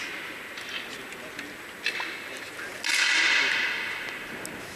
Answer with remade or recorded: recorded